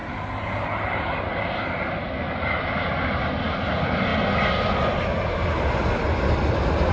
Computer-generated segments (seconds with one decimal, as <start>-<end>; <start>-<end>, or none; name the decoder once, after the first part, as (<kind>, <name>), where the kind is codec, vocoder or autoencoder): none